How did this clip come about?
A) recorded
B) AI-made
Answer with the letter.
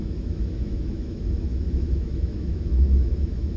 B